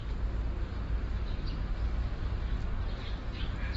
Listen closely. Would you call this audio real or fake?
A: real